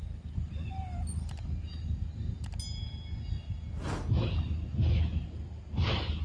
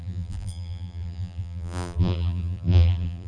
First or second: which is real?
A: first